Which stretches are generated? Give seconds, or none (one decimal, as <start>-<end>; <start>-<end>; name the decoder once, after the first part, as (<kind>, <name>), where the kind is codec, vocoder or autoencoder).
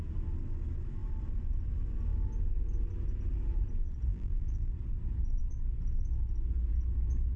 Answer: 4.1-4.7 (vocoder, BigVGAN v2)